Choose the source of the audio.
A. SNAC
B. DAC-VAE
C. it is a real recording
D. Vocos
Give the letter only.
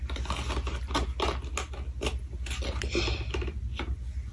C